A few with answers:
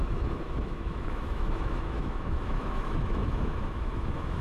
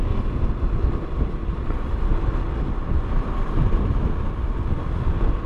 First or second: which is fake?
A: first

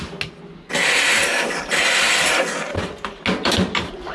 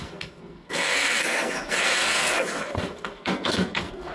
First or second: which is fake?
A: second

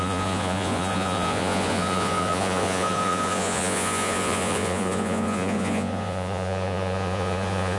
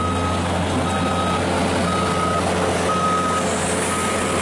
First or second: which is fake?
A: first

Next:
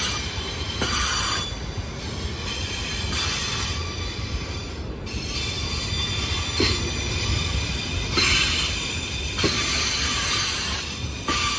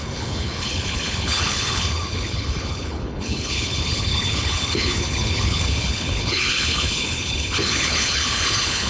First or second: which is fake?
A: second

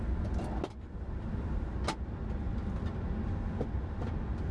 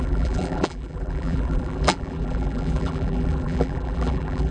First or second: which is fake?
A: second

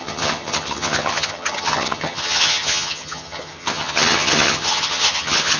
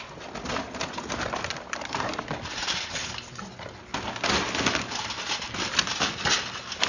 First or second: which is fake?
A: first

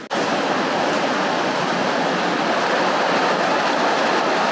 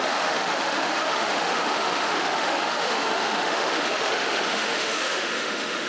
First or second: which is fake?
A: second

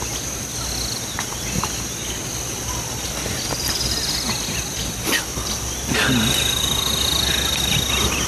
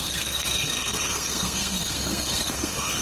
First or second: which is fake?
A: second